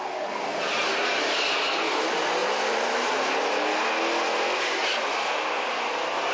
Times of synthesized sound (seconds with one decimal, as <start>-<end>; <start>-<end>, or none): none